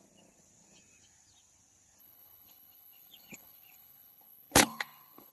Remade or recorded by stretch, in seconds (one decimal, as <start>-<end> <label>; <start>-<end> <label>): 0.0-2.0 recorded; 2.0-5.3 remade